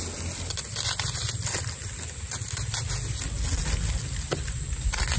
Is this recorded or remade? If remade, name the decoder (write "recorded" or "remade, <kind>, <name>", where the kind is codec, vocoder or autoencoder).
recorded